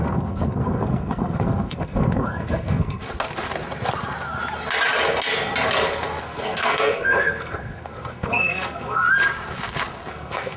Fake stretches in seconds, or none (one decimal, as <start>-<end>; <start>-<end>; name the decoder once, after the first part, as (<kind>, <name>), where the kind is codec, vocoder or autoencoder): 0.0-3.0 (codec, SNAC); 6.2-9.0; 10.1-10.6